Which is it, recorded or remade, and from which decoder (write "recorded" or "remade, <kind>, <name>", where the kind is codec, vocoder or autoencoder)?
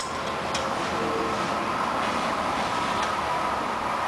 recorded